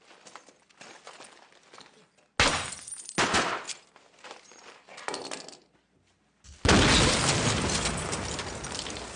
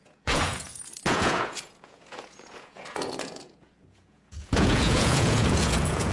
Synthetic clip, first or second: second